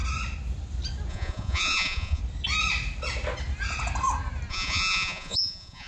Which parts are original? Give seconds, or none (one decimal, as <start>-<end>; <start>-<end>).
0.0-1.1; 2.2-4.5